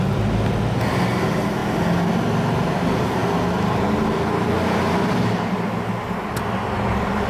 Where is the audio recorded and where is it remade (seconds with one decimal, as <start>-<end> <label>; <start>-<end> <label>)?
0.0-7.3 recorded